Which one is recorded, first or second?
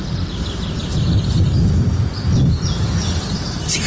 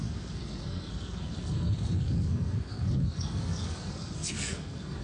first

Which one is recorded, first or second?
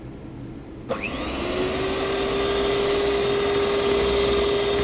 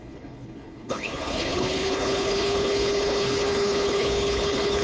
first